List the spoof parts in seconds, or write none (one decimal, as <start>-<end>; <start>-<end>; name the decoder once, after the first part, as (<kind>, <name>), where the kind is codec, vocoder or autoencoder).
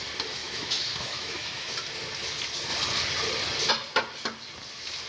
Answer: 0.4-1.7 (autoencoder, DAC-VAE)